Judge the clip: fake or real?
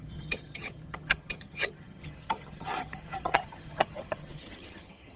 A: fake